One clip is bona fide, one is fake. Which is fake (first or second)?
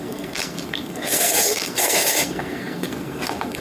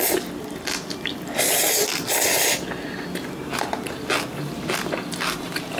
first